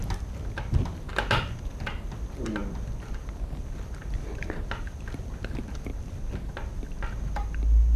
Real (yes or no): yes